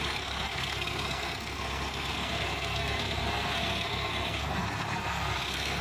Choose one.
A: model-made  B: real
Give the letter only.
A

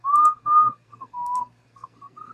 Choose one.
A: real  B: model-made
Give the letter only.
B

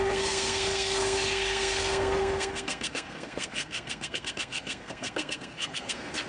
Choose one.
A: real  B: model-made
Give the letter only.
B